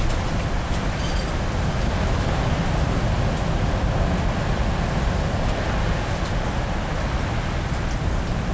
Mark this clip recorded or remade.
recorded